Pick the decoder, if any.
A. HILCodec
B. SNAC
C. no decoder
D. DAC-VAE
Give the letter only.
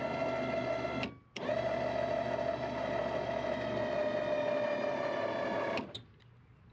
C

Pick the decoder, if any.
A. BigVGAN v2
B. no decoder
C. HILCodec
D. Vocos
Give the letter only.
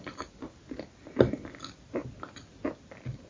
B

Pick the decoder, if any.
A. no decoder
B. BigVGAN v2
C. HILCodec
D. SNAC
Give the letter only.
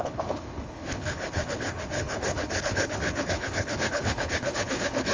C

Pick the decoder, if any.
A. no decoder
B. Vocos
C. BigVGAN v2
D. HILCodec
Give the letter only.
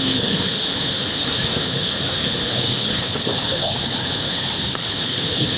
D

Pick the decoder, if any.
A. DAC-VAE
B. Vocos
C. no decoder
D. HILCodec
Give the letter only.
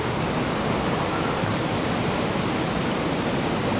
C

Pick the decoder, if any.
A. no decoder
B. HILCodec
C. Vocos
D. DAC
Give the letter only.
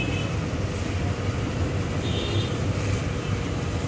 A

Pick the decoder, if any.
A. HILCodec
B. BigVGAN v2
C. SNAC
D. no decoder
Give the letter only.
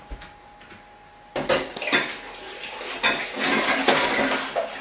D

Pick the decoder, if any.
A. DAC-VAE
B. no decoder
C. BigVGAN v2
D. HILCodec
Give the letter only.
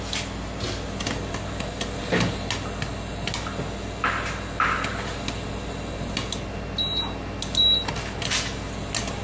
B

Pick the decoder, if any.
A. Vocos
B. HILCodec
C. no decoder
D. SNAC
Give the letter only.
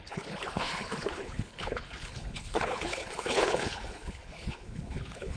B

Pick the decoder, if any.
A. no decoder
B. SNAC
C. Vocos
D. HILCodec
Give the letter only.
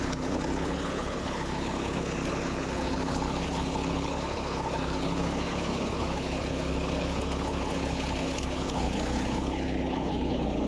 D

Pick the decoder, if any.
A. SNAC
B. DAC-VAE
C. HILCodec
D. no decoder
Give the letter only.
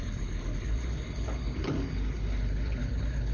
C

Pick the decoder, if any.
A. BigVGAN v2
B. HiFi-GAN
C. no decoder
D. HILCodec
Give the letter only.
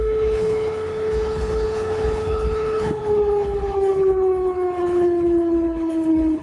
D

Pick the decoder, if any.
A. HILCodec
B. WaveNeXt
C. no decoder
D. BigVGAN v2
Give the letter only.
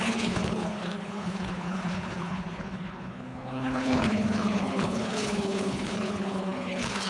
A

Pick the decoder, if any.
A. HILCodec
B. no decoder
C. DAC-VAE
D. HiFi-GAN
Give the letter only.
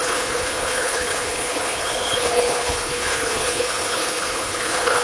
A